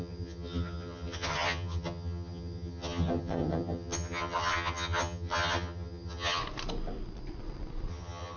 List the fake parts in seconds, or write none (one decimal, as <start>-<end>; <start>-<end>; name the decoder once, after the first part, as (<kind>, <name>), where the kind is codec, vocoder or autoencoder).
0.0-6.4 (vocoder, HiFi-GAN); 7.9-8.4